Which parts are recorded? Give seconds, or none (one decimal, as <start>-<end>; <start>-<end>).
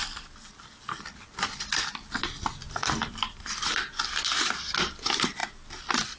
3.7-5.4